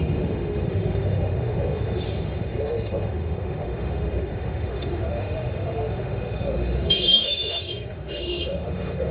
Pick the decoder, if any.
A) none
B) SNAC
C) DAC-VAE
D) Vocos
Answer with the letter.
C